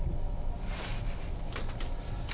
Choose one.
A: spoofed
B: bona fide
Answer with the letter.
B